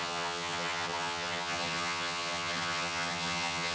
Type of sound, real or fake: fake